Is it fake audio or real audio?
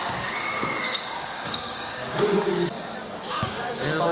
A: fake